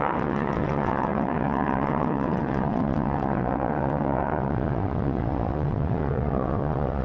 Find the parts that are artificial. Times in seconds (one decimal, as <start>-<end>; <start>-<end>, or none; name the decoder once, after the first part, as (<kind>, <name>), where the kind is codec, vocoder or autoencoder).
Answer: 0.0-7.0 (vocoder, WaveNeXt)

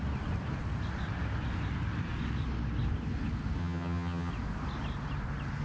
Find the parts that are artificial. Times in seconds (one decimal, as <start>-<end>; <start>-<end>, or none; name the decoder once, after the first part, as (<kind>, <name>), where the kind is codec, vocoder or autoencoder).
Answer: 3.6-4.3 (vocoder, HiFi-GAN)